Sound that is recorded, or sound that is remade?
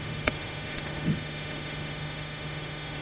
remade